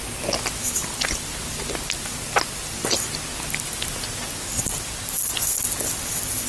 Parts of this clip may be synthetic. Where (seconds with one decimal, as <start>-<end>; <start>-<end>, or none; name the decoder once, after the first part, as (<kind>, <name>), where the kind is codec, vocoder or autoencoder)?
none